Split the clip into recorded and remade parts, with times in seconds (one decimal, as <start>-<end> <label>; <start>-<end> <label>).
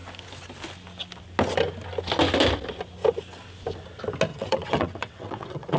0.0-4.3 recorded; 4.3-5.8 remade